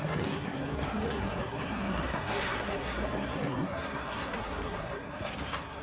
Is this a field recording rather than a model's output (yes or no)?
no